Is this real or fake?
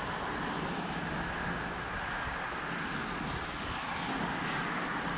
real